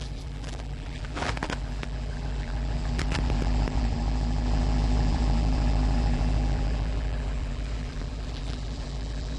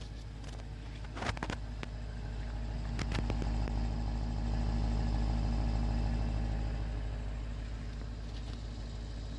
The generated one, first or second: first